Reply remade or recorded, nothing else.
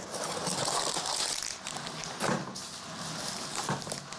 recorded